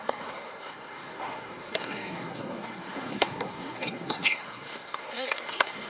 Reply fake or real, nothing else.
fake